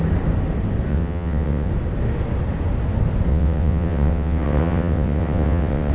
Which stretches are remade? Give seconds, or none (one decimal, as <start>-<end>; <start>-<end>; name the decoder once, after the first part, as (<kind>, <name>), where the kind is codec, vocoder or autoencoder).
0.9-1.7 (vocoder, WaveNeXt); 3.3-5.9